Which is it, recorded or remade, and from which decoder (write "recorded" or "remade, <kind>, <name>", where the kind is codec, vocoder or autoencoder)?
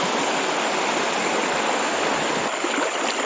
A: recorded